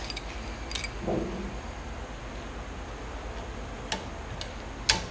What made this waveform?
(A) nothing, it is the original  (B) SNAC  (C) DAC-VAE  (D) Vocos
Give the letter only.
A